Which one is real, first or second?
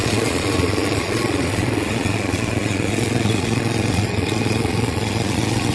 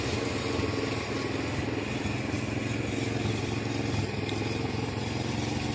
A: second